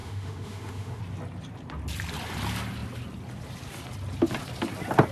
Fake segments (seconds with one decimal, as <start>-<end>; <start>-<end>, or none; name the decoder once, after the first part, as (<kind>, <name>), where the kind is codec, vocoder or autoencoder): 0.0-1.0 (autoencoder, DAC-VAE)